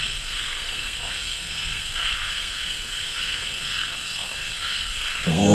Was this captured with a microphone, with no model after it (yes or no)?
no